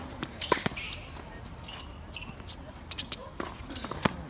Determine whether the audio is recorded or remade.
recorded